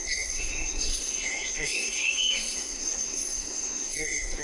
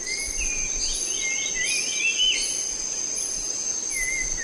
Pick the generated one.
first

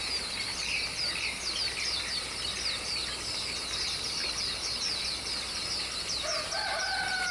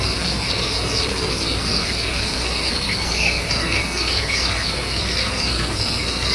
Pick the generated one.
second